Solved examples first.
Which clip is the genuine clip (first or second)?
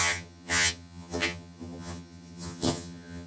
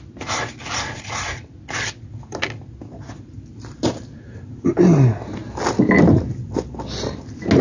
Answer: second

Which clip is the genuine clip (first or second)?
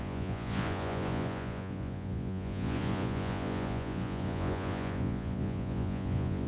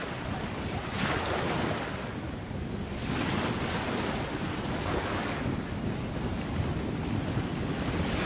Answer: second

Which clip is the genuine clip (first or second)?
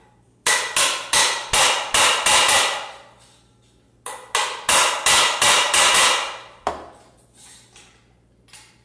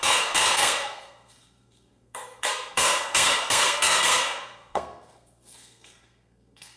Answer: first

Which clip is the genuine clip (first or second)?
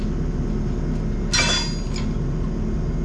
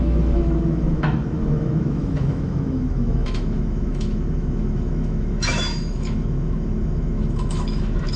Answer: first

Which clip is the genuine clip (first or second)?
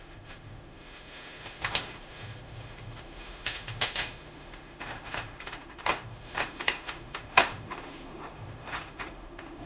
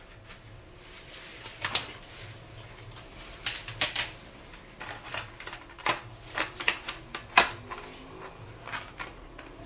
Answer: second